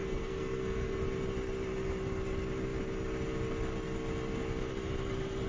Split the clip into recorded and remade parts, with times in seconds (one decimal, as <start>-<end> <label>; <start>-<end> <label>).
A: 0.0-1.0 remade; 1.0-5.5 recorded